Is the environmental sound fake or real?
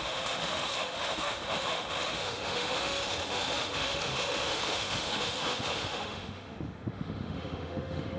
fake